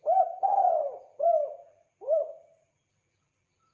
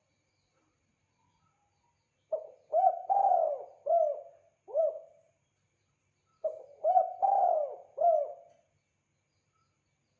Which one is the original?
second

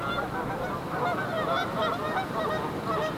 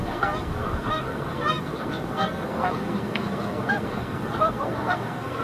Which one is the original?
first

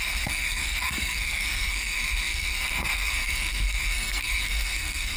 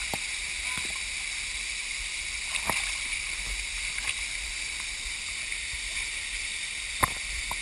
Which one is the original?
second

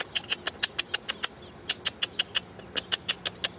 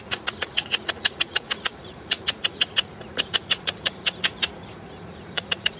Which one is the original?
first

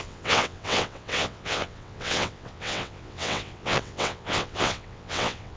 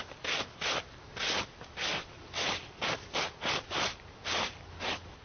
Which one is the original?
second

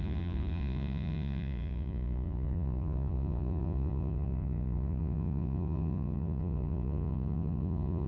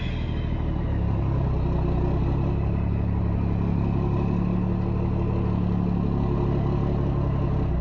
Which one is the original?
second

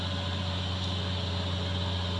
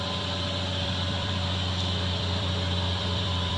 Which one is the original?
first